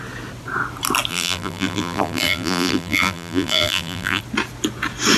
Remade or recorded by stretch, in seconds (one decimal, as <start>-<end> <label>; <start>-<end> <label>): 0.0-1.1 recorded; 1.1-4.2 remade; 4.2-5.2 recorded